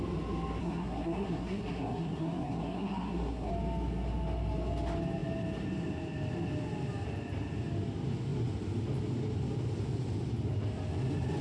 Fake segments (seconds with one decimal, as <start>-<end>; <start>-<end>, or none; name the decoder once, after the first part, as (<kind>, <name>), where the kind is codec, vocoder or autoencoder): 0.6-3.5 (codec, SNAC)